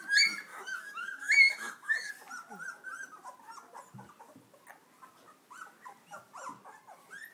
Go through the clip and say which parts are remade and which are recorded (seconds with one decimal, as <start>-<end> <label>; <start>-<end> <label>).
0.0-0.5 recorded; 0.5-2.1 remade; 2.1-7.3 recorded